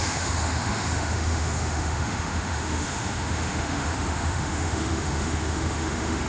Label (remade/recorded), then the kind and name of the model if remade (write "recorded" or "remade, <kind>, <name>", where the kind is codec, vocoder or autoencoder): remade, autoencoder, DAC-VAE